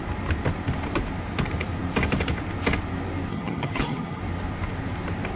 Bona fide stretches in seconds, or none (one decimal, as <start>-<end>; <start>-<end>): 0.0-3.3; 4.2-5.4